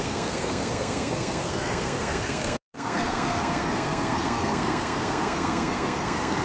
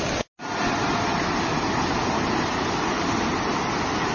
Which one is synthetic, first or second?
first